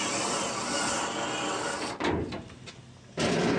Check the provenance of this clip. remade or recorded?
recorded